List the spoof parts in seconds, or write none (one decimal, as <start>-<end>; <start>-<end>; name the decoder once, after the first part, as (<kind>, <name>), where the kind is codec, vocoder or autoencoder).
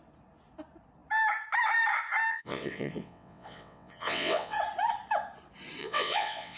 2.3-4.6 (vocoder, WaveNeXt); 5.8-6.6